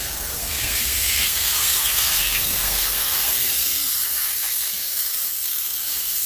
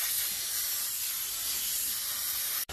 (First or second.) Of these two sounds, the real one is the second